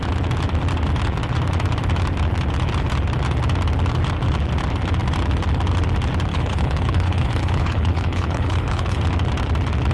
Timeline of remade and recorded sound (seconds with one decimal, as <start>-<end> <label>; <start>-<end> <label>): 0.0-6.3 recorded; 6.3-9.0 remade; 9.0-9.9 recorded